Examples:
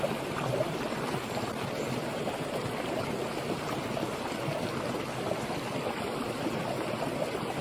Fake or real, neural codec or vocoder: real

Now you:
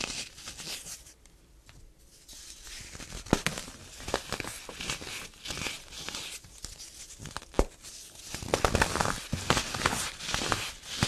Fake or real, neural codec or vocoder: real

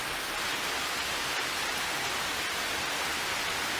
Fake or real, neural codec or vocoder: real